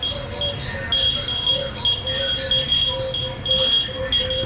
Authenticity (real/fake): real